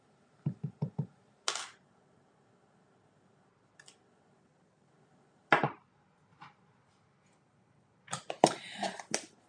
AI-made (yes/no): no